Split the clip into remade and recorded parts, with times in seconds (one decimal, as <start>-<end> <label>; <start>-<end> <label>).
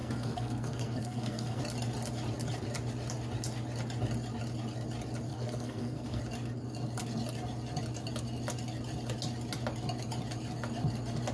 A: 0.0-1.6 remade; 1.6-5.3 recorded; 5.3-6.2 remade; 6.2-11.3 recorded